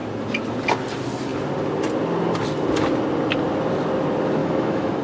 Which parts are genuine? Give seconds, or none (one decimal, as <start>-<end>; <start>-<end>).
0.0-4.4